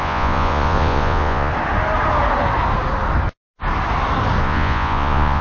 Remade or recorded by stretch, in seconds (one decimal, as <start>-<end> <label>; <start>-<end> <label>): 0.0-1.5 remade; 1.5-4.4 recorded; 4.4-5.4 remade